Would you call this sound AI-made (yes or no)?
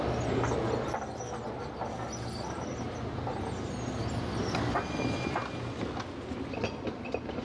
no